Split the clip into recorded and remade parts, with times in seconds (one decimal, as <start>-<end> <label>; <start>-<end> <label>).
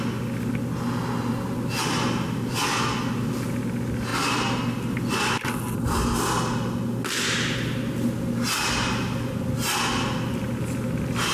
0.0-11.3 recorded